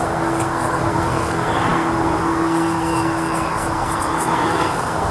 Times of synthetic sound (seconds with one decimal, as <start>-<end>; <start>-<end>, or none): 0.0-5.1